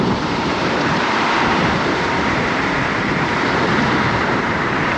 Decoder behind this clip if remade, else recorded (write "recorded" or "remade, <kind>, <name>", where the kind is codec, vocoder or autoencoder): remade, vocoder, BigVGAN v2